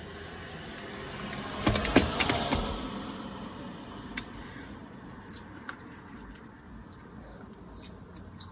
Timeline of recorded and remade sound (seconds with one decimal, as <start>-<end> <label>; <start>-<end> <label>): 0.0-2.0 recorded; 2.0-6.7 remade; 6.7-8.5 recorded